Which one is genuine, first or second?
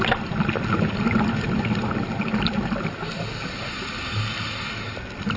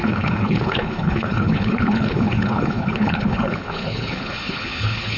first